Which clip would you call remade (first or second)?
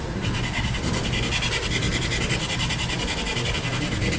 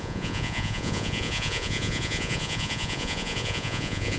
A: second